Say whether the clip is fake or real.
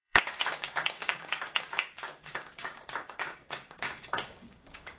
fake